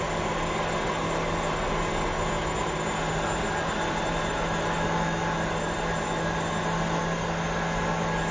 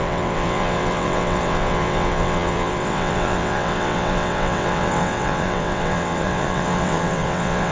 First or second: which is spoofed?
second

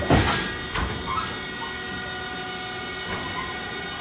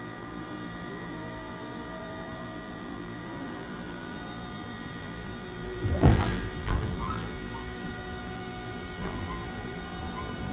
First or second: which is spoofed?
second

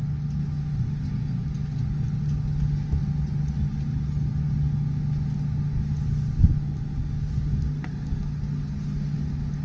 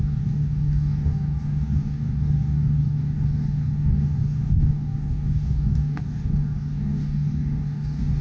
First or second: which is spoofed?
second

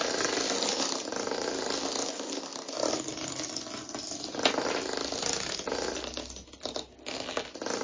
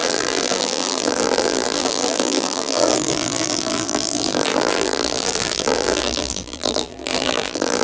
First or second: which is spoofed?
second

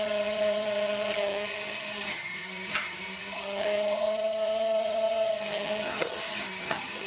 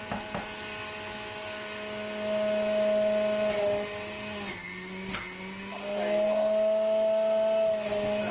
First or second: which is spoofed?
first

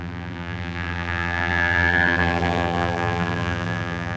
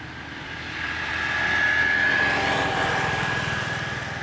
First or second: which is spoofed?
first